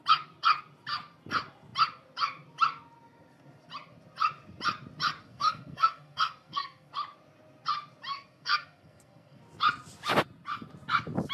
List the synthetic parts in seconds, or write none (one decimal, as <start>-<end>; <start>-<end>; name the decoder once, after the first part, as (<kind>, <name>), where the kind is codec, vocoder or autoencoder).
5.2-6.9 (codec, SNAC); 8.1-9.4